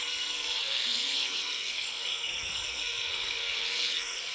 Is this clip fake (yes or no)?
yes